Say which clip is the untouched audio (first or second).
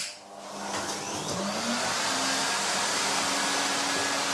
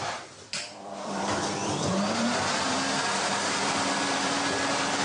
first